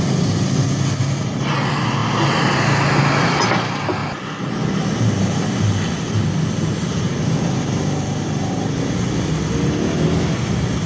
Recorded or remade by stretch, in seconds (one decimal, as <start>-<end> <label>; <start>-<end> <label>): 0.0-10.9 recorded